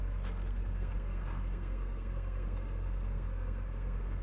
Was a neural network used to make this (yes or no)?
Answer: yes